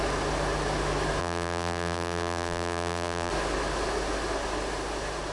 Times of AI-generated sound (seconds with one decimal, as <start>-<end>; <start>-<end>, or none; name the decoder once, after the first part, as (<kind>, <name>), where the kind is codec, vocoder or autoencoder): 1.2-3.3 (vocoder, BigVGAN v2)